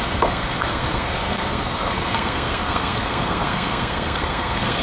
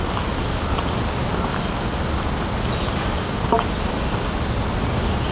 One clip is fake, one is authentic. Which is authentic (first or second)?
second